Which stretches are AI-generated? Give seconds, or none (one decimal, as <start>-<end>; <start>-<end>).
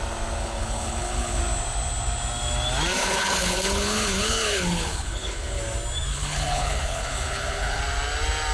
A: 0.4-1.4; 3.0-5.6; 6.1-7.8